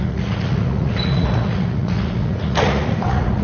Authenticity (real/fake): fake